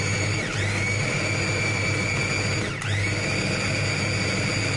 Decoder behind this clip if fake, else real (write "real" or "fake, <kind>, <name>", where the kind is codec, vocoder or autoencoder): real